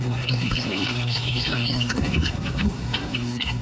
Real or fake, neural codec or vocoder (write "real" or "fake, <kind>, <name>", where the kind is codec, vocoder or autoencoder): fake, codec, SNAC